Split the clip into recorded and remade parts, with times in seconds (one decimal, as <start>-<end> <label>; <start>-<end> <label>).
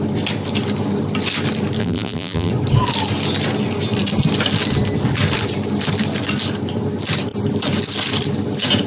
0.0-1.8 recorded; 1.8-2.5 remade; 2.5-8.9 recorded